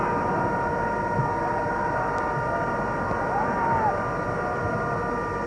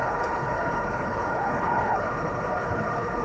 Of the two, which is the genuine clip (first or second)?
first